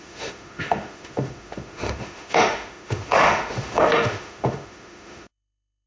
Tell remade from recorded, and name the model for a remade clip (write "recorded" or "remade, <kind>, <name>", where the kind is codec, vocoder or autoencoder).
remade, autoencoder, DAC-VAE